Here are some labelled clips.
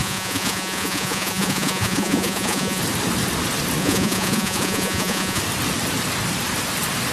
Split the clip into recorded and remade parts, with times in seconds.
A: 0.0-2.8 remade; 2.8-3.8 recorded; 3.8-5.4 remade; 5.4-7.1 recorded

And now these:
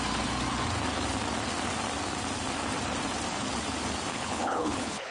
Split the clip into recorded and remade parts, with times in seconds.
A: 0.0-4.1 recorded; 4.1-5.1 remade